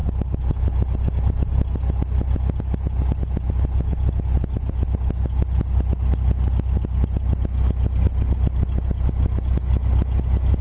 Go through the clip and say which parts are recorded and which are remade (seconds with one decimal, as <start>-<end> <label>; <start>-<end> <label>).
0.0-10.6 recorded